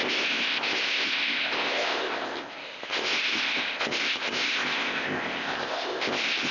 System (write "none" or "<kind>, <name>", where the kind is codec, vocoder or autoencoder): codec, ZipCodec